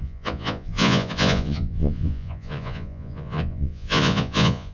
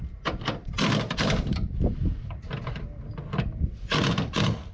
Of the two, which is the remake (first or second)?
first